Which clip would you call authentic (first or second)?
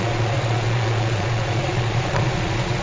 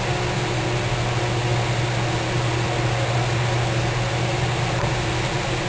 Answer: second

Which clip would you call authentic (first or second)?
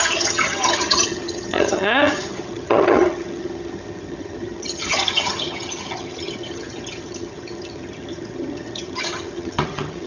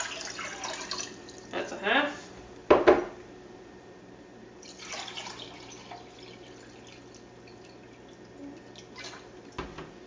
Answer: second